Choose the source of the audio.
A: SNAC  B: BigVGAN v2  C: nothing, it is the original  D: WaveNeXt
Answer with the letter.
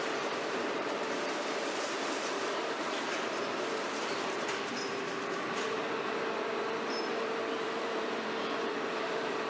B